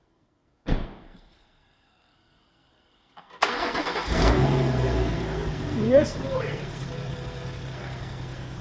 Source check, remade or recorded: remade